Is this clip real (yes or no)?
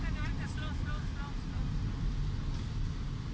yes